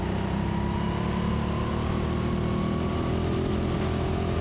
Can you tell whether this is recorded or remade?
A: recorded